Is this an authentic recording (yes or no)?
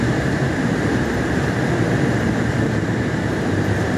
no